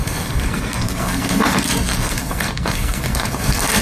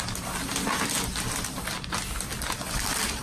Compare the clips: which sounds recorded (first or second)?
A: second